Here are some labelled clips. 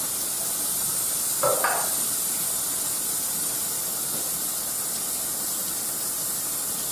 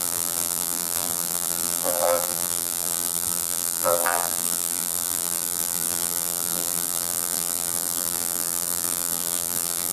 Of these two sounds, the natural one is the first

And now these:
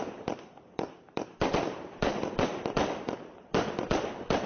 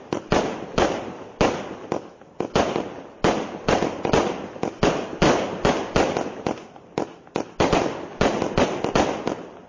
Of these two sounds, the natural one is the second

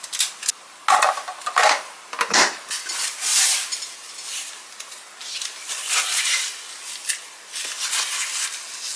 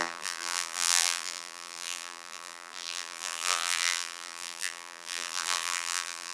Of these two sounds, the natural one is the first